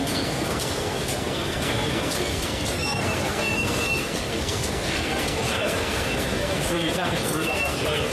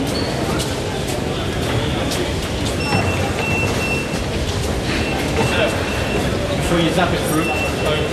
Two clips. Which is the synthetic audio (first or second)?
first